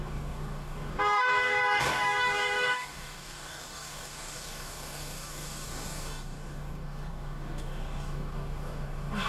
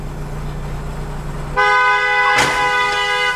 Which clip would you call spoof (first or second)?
first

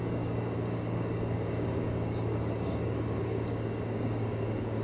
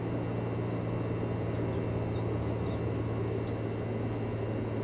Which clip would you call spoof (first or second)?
first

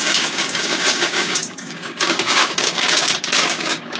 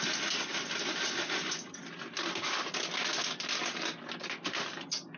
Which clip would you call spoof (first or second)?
first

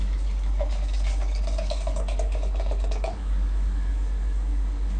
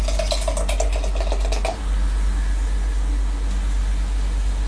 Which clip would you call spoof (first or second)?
first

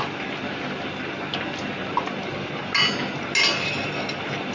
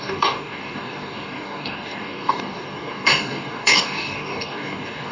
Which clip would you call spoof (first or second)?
second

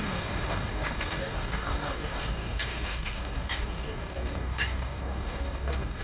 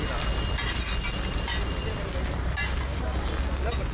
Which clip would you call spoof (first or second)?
first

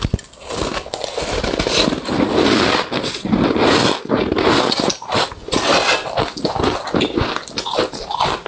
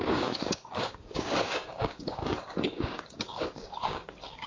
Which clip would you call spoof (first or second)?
second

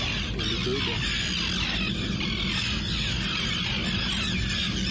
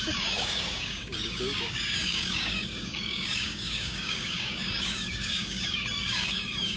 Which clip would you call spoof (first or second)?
second